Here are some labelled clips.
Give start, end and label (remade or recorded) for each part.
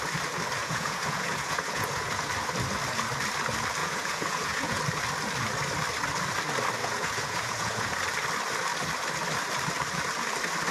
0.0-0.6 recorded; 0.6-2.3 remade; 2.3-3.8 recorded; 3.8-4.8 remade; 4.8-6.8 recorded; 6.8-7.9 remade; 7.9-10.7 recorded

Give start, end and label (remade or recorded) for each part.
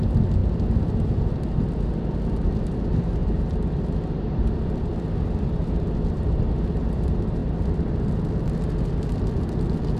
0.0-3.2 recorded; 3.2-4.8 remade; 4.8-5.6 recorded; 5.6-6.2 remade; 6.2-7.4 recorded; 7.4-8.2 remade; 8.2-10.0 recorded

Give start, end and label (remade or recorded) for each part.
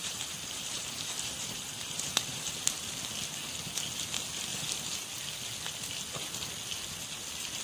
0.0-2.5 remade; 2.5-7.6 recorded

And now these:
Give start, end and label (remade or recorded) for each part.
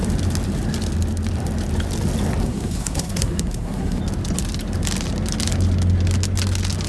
0.0-2.4 recorded; 2.4-4.0 remade; 4.0-6.9 recorded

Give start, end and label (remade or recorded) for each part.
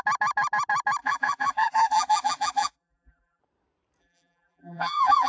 0.0-1.0 recorded; 1.0-3.4 remade; 3.4-4.0 recorded; 4.0-5.3 remade